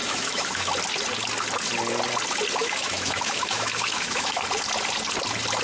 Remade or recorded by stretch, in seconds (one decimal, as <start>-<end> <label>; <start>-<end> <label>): 0.0-0.7 remade; 0.7-2.6 recorded; 2.6-4.4 remade; 4.4-5.6 recorded